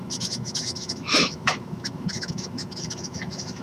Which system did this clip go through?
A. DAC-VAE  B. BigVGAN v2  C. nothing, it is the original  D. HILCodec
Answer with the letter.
A